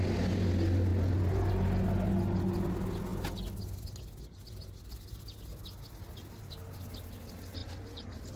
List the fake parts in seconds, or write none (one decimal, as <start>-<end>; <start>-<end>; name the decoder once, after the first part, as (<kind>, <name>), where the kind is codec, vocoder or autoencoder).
none